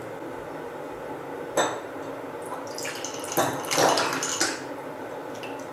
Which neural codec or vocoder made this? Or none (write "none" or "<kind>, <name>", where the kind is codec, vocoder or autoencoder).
none